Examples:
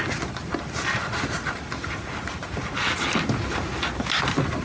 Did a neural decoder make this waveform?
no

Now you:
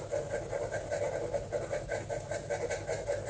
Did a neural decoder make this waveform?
no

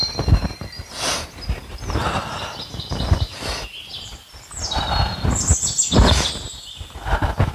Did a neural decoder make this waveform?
no